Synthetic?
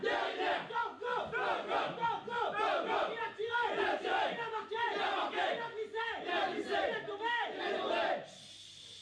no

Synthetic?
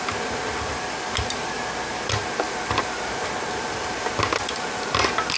no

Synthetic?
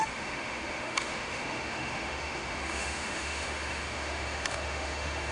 yes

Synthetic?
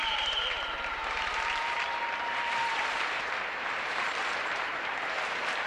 yes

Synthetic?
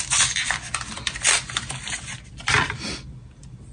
no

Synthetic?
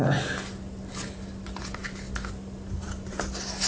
no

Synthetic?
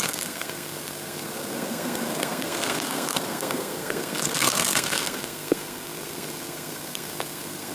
yes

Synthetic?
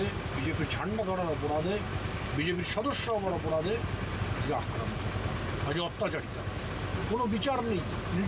no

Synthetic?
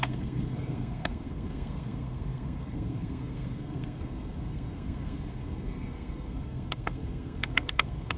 yes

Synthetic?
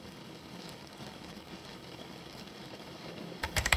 yes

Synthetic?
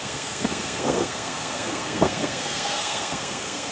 yes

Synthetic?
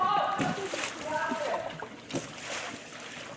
no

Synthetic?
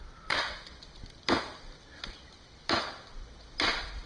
no